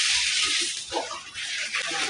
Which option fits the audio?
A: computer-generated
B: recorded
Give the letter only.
B